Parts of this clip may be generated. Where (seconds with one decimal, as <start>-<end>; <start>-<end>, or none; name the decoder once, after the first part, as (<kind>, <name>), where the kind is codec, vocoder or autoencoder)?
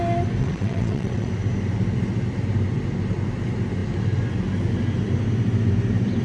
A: 0.4-1.3 (vocoder, WaveNeXt)